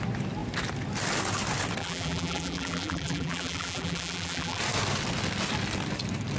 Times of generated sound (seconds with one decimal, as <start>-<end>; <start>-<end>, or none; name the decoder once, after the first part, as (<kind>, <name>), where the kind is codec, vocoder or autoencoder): 1.8-4.6 (vocoder, BigVGAN v2)